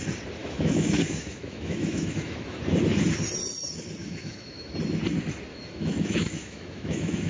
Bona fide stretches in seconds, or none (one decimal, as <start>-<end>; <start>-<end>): 0.0-0.4; 2.6-4.0; 4.7-5.5